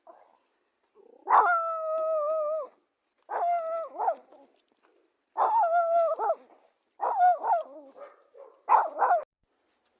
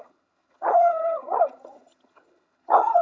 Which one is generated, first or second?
second